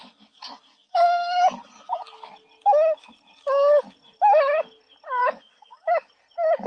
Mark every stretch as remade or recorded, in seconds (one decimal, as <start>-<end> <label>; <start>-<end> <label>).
0.0-2.3 remade; 2.3-5.2 recorded; 5.2-6.1 remade; 6.1-6.7 recorded